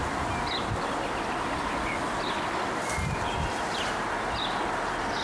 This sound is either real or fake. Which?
real